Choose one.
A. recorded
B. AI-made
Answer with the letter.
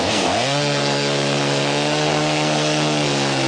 B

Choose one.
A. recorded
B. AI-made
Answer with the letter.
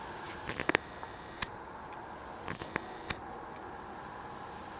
A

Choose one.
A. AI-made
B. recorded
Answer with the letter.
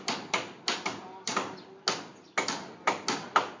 B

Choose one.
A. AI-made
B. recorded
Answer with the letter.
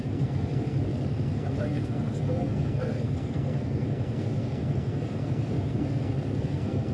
A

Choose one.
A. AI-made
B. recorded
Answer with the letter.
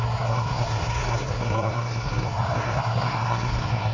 A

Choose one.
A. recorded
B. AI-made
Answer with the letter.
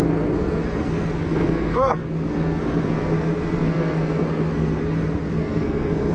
B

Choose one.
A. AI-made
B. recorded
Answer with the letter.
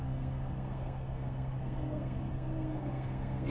A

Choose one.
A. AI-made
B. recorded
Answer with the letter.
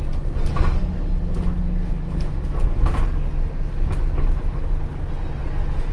B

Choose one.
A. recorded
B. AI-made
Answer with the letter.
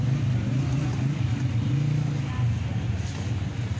A